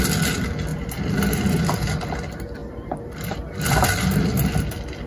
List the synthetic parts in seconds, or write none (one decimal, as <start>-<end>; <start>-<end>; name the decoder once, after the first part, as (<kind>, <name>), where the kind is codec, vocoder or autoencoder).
0.7-2.0 (vocoder, BigVGAN v2); 2.6-4.6